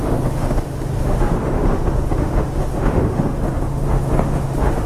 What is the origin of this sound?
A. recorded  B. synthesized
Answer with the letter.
B